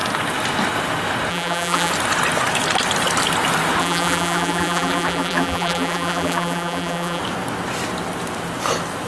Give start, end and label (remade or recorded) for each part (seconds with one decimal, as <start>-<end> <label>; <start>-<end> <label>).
0.0-1.3 recorded; 1.3-1.9 remade; 1.9-3.8 recorded; 3.8-7.2 remade; 7.2-9.1 recorded